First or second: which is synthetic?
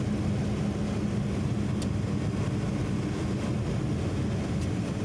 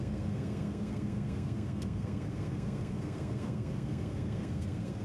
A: second